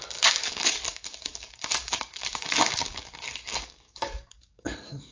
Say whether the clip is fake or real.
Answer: fake